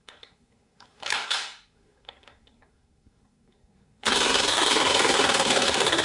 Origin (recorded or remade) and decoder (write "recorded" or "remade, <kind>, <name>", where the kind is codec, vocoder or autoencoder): remade, codec, SNAC